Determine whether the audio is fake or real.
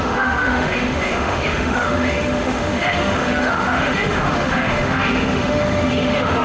fake